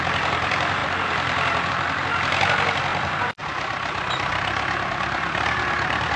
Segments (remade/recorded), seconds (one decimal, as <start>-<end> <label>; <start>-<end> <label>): 0.0-6.2 remade

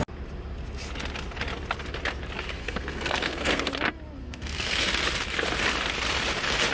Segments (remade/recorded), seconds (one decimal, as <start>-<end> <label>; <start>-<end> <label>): 0.0-2.6 recorded; 2.6-3.7 remade; 3.7-4.2 recorded; 4.2-4.9 remade; 4.9-6.7 recorded

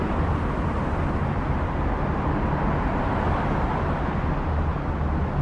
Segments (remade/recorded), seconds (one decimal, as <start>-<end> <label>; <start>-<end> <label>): 0.0-5.4 recorded

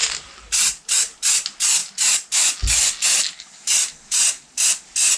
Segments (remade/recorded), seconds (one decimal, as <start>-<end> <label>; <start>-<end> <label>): 0.0-0.5 remade; 0.5-5.2 recorded

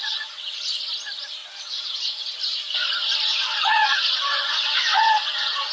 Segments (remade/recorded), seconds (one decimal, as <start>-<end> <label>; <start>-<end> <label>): 0.0-0.6 remade; 0.6-1.4 recorded; 1.4-2.4 remade; 2.4-3.3 recorded; 3.3-5.7 remade

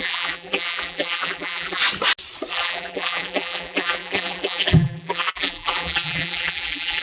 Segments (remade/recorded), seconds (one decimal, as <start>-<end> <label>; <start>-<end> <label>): 0.0-1.8 remade; 1.8-2.5 recorded; 2.5-7.0 remade

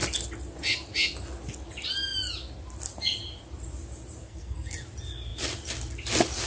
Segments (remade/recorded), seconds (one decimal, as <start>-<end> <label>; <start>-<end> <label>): 0.0-4.2 recorded; 4.2-4.8 remade; 4.8-6.5 recorded